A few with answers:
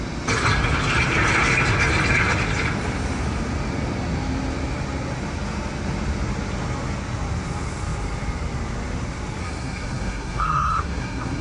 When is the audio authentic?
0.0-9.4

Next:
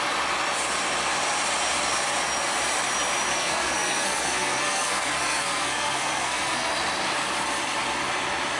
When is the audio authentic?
0.0-3.3; 6.7-8.6

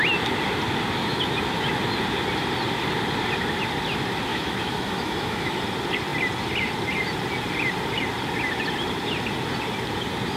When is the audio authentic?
0.0-1.0; 1.8-4.3; 5.6-10.4

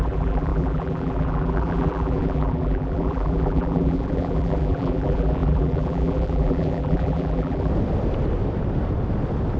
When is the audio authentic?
7.7-9.6